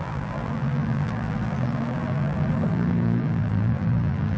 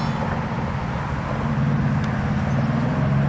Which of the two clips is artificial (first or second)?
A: first